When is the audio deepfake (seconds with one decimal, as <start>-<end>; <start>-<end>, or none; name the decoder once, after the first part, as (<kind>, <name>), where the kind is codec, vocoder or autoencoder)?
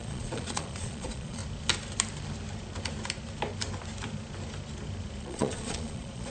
0.0-1.4 (vocoder, Vocos); 5.2-6.3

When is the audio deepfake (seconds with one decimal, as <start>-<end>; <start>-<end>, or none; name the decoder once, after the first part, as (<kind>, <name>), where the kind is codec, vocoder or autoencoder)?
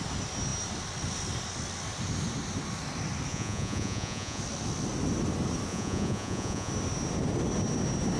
3.3-4.4 (vocoder, Vocos); 5.7-6.7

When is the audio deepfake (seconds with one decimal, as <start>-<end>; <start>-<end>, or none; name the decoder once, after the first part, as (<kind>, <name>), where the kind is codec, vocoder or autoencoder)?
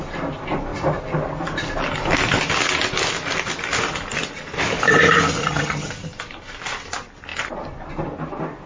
5.4-5.9 (vocoder, HiFi-GAN)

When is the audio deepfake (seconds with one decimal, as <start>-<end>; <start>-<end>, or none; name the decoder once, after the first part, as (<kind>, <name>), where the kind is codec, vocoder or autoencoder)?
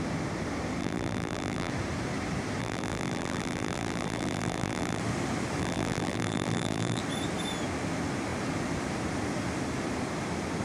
0.8-1.7 (vocoder, BigVGAN v2); 2.6-5.0; 5.6-7.0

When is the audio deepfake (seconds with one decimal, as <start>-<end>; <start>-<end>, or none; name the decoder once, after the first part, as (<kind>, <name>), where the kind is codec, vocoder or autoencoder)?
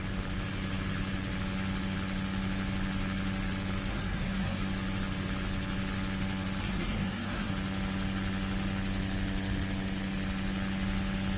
3.9-4.6 (codec, SNAC); 6.6-7.5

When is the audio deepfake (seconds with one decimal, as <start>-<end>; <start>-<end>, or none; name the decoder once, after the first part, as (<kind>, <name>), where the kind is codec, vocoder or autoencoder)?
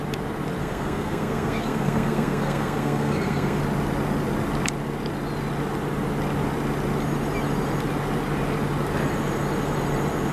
0.6-3.6 (codec, SNAC)